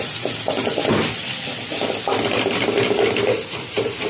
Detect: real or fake fake